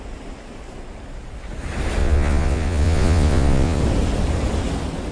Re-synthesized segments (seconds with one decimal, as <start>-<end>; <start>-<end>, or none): 2.0-3.8